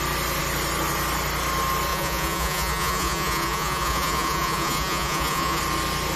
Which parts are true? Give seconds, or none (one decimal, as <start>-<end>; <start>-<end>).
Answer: 0.0-1.9; 5.6-6.2